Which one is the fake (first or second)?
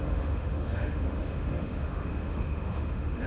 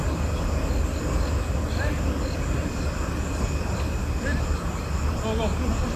first